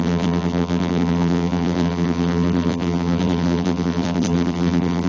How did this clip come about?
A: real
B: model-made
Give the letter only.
B